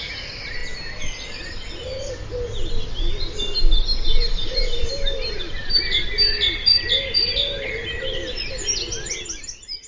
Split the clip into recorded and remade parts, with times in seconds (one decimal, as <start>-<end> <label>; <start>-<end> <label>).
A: 0.0-9.9 recorded